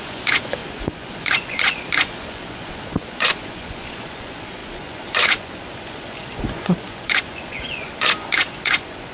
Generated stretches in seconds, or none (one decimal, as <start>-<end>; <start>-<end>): 0.0-9.1

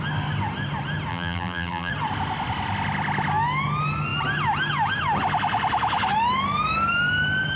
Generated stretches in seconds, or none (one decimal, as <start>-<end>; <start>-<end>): 1.1-1.9

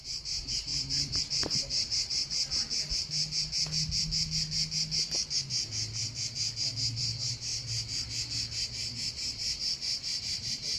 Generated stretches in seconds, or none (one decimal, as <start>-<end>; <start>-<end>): 0.0-2.4; 7.0-7.5; 10.2-10.8